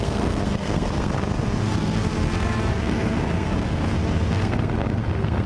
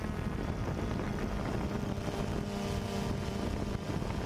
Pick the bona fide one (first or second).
second